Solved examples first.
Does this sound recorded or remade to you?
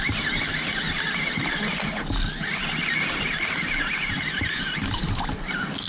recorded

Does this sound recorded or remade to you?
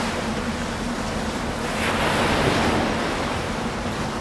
recorded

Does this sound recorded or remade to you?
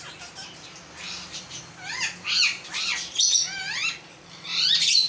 recorded